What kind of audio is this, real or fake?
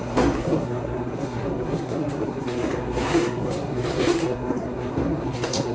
fake